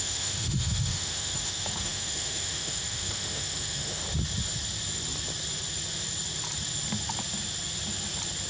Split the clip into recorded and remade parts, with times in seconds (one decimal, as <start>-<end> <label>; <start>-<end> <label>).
0.0-4.0 remade; 4.0-8.5 recorded